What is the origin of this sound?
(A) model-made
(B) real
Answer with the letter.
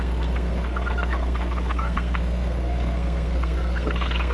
A